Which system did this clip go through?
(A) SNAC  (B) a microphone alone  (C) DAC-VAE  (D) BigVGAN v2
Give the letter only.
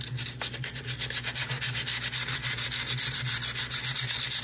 B